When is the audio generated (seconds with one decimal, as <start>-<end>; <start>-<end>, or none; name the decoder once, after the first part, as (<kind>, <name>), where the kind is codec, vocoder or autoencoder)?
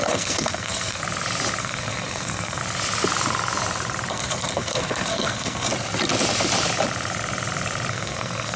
0.0-1.0 (codec, SNAC); 1.6-2.6; 4.1-5.7; 7.9-8.6